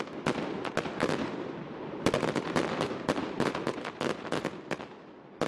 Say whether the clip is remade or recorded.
recorded